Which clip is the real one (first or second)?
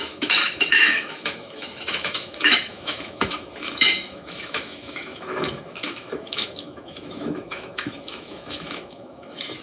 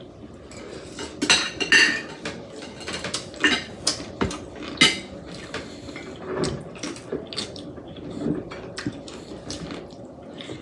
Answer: second